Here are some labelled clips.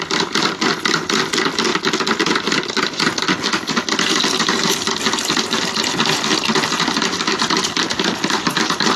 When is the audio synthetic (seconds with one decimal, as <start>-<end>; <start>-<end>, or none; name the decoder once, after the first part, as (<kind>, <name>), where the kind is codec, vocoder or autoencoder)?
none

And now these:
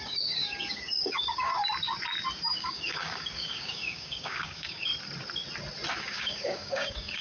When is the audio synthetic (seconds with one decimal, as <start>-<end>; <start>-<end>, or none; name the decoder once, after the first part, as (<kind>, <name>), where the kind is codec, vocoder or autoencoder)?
0.0-1.5 (codec, DAC); 2.6-4.9; 6.0-7.2

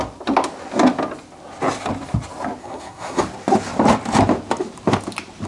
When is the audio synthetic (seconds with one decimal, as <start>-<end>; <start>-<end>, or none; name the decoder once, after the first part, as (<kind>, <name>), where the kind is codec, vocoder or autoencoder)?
2.6-3.2 (codec, SNAC)

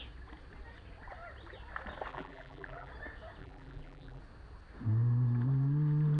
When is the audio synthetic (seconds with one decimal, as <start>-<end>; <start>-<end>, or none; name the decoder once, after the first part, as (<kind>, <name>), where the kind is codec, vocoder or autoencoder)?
2.1-2.9 (vocoder, BigVGAN v2); 3.4-4.2

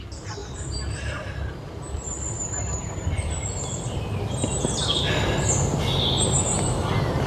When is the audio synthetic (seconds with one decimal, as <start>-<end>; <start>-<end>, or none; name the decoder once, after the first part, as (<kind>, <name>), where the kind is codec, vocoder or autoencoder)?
0.4-4.6 (vocoder, BigVGAN v2)

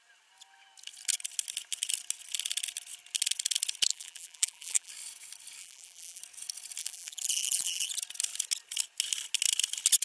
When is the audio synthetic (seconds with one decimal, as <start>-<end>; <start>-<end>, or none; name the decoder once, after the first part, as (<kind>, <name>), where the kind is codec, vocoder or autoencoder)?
3.9-4.9 (vocoder, BigVGAN v2); 5.6-6.2; 6.8-7.9

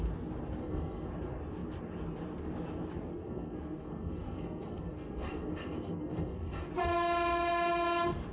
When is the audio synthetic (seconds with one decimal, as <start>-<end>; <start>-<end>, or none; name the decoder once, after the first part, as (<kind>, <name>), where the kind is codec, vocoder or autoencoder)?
0.6-1.1 (codec, SNAC); 3.1-6.7